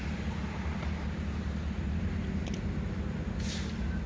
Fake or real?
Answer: real